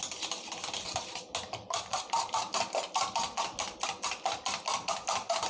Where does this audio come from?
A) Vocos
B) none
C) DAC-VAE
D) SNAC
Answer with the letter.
B